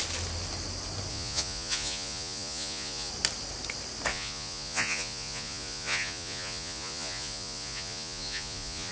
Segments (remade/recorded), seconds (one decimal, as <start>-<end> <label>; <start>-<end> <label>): 0.0-1.1 recorded; 1.1-3.1 remade; 3.1-4.1 recorded; 4.1-8.9 remade